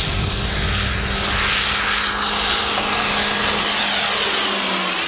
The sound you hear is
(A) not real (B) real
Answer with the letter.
B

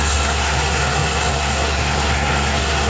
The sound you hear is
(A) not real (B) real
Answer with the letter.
A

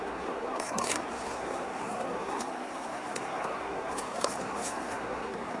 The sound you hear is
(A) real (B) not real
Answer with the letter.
B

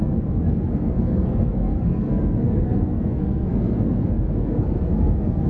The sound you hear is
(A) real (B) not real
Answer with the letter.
B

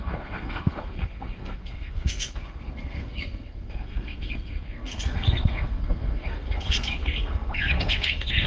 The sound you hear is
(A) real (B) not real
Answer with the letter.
B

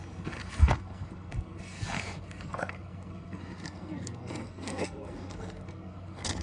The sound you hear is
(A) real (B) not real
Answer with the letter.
B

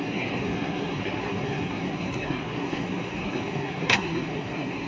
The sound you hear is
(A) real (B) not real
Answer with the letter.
B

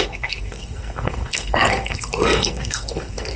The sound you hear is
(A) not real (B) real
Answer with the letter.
A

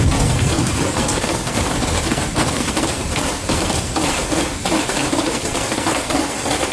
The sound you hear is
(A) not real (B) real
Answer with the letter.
A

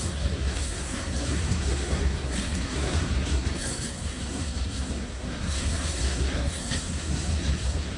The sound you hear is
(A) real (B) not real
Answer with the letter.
B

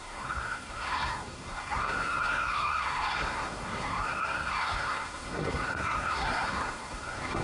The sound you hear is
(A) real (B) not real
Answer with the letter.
B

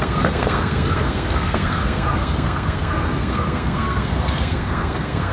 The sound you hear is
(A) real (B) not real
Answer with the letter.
B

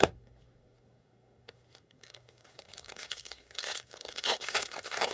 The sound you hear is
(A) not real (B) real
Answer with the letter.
A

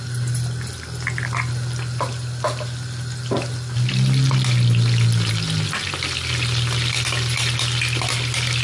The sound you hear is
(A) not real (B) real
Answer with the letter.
B